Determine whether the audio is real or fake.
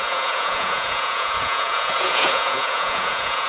fake